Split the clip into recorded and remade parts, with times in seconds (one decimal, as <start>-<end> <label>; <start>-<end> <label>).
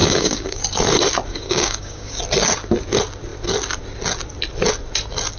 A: 0.0-0.6 remade; 0.6-1.3 recorded; 1.3-2.2 remade; 2.2-5.4 recorded